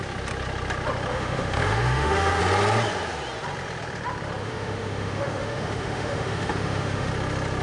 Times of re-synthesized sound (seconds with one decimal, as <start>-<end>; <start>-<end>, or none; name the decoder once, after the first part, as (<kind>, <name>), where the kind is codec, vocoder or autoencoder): 1.1-2.4 (autoencoder, DAC-VAE); 4.4-7.1